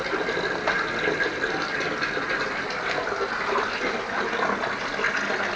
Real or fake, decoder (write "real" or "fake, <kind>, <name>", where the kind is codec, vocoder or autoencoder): real